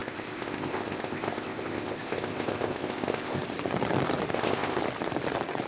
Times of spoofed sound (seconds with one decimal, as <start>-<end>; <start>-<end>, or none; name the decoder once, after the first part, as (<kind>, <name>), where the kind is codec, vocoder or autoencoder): 0.0-3.4 (codec, ZipCodec); 4.3-4.8